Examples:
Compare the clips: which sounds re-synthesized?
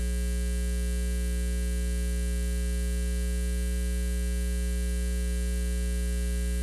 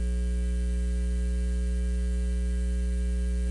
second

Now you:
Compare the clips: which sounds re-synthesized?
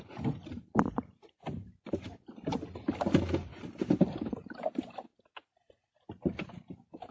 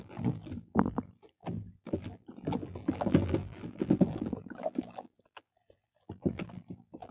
second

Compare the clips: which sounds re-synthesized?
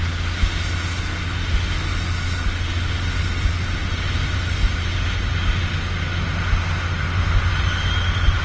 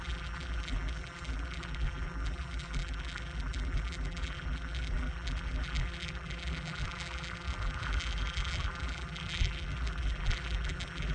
second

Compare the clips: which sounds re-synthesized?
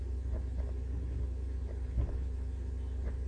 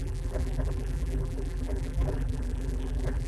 second